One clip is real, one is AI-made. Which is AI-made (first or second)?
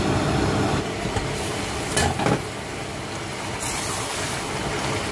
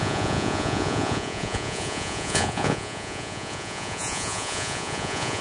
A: second